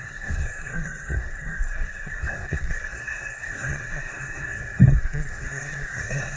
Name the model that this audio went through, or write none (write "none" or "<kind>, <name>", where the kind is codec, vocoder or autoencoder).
codec, SNAC